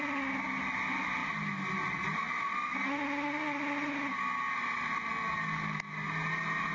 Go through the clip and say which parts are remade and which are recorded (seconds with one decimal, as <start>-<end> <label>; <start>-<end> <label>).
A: 0.0-6.7 recorded